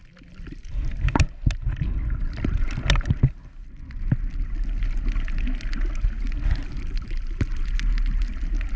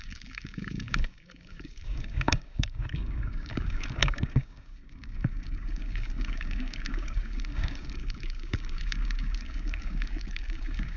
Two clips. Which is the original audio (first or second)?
first